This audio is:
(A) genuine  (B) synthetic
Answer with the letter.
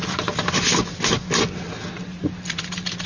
A